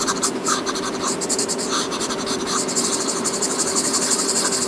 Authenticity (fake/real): real